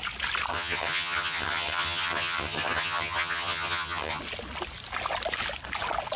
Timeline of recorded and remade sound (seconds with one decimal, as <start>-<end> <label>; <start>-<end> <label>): 0.0-0.5 recorded; 0.5-4.2 remade; 4.2-6.2 recorded